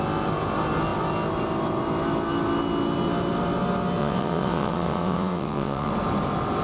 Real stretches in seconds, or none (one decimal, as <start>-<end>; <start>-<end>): 0.0-4.0; 5.9-6.6